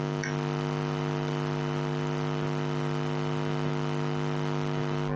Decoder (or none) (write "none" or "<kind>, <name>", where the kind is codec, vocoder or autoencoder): none